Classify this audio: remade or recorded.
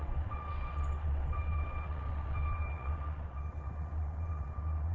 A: remade